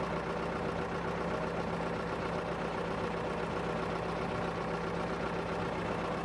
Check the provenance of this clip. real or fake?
real